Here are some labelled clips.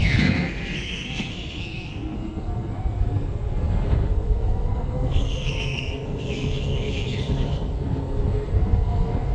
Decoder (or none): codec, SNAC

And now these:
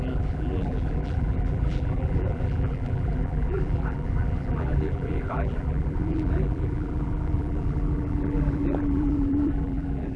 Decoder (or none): vocoder, BigVGAN v2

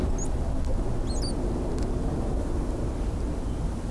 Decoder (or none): none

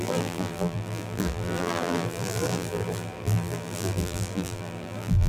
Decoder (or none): vocoder, BigVGAN v2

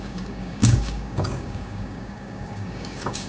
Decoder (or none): codec, DAC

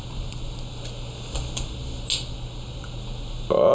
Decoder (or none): none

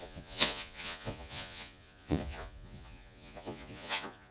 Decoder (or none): vocoder, Vocos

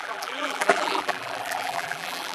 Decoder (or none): vocoder, BigVGAN v2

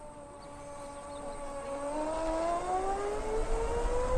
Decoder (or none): none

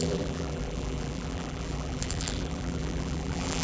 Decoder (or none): vocoder, BigVGAN v2